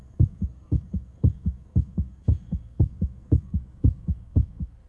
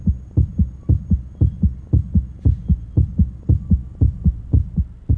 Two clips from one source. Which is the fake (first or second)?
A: first